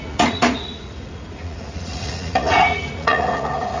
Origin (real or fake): fake